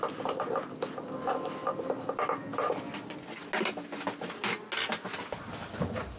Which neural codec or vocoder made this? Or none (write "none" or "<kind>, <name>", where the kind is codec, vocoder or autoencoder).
none